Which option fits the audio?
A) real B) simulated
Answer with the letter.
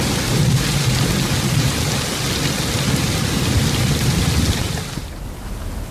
A